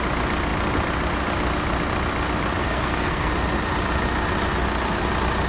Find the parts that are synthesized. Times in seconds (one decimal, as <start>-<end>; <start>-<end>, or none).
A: 2.6-3.3